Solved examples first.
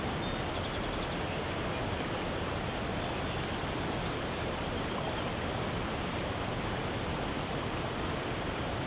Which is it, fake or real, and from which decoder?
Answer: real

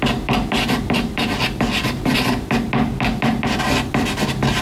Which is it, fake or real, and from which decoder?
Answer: real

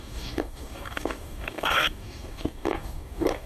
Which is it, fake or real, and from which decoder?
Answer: fake, codec, DAC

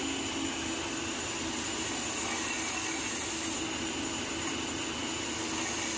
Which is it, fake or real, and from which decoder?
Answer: real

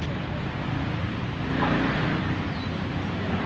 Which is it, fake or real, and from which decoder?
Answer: real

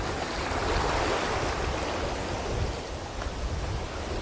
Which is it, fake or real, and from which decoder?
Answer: real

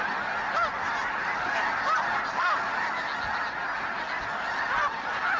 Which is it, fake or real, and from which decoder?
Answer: real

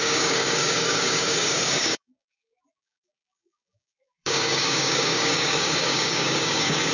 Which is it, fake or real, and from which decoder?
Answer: fake, codec, DAC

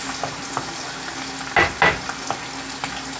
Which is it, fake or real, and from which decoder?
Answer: real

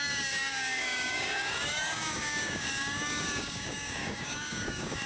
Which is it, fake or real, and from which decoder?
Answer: fake, codec, DAC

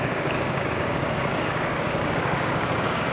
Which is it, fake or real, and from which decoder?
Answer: fake, codec, DAC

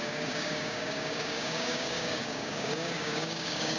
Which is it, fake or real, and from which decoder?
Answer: fake, codec, DAC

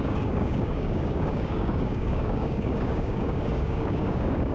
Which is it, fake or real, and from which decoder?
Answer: fake, codec, DAC